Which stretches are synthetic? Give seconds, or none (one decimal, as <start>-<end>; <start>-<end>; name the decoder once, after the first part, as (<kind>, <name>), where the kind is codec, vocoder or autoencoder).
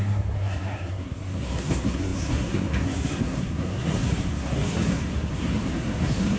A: 0.0-6.4 (codec, SNAC)